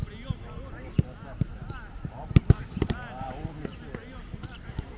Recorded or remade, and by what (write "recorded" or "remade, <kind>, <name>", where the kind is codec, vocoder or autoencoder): recorded